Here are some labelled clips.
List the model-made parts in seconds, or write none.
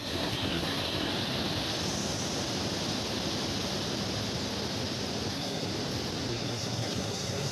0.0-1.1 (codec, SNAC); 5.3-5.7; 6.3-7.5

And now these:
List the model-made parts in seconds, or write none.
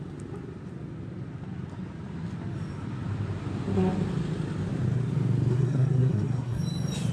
5.5-6.6 (codec, SNAC)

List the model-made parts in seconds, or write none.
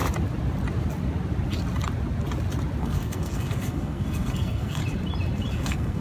2.8-4.8 (codec, SNAC); 5.5-6.0